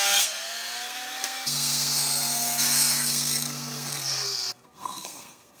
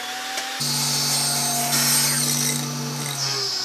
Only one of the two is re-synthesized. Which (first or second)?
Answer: first